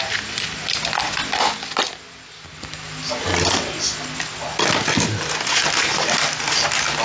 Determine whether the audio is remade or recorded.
recorded